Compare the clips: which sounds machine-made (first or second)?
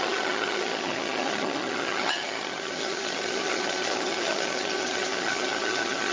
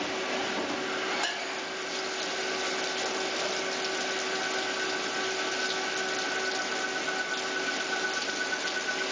first